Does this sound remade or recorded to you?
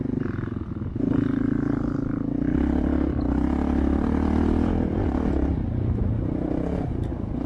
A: recorded